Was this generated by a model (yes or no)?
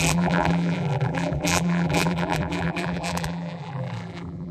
yes